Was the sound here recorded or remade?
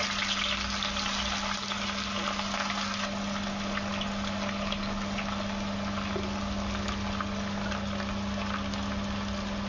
recorded